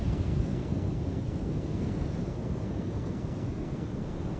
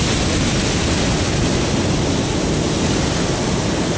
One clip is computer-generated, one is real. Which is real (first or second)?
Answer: second